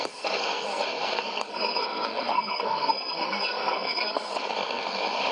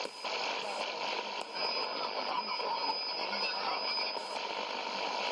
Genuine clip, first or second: second